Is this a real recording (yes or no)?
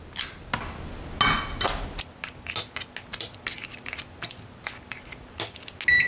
yes